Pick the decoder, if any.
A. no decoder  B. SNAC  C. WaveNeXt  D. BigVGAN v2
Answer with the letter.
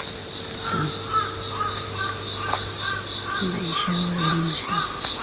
A